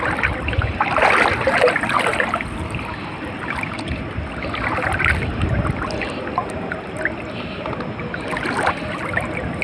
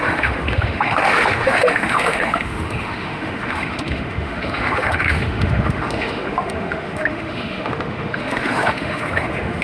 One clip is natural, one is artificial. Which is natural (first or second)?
first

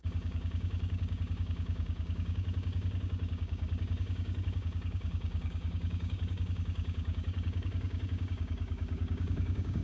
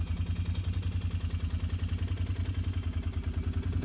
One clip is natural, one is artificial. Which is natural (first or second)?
second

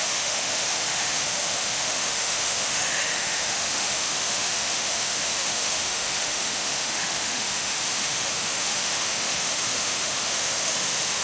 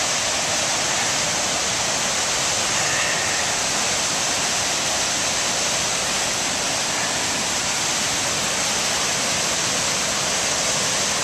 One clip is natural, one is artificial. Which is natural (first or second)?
second